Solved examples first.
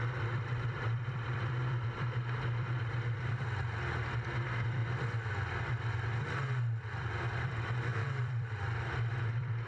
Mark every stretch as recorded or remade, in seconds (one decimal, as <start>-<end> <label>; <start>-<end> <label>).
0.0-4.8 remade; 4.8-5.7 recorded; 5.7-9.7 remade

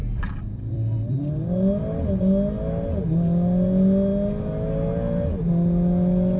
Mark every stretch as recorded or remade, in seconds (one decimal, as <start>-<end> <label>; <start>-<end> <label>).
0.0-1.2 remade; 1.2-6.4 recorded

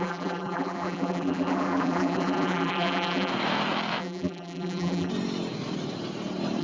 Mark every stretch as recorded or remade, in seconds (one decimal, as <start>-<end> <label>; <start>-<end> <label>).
0.0-3.3 remade; 3.3-4.0 recorded; 4.0-5.1 remade; 5.1-6.6 recorded

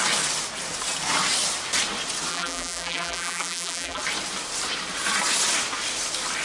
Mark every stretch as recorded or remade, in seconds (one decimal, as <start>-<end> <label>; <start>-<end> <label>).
0.0-2.3 recorded; 2.3-4.0 remade; 4.0-6.4 recorded

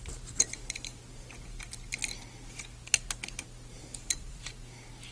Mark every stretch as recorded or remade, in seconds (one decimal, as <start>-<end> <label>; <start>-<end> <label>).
0.0-3.8 recorded; 3.8-4.4 remade; 4.4-5.1 recorded

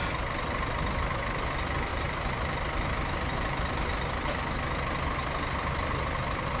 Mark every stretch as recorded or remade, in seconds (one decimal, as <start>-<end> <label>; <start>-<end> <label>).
0.0-1.9 recorded; 1.9-4.3 remade; 4.3-6.6 recorded

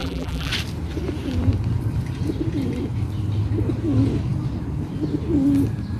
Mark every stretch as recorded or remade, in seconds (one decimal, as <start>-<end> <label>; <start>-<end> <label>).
0.0-0.5 remade; 0.5-6.0 recorded

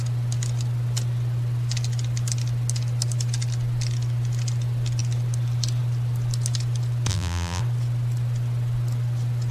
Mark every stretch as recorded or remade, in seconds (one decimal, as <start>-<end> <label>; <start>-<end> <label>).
0.0-7.1 recorded; 7.1-7.6 remade; 7.6-9.5 recorded